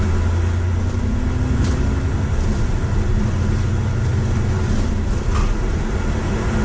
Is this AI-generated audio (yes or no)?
no